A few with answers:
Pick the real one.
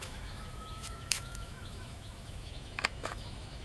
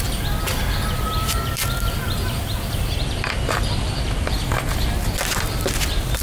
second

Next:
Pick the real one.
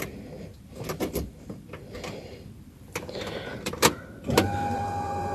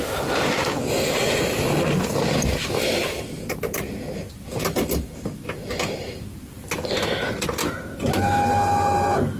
second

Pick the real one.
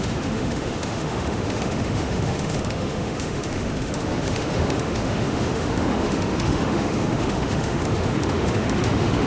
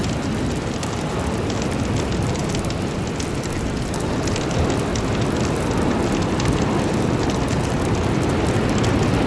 second